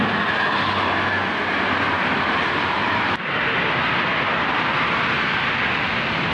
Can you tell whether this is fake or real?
real